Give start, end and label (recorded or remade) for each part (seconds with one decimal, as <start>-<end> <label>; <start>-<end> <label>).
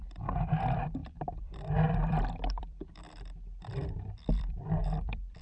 0.0-5.4 remade